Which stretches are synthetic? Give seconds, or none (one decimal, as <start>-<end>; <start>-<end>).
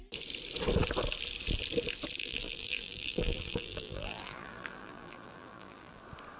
2.2-6.0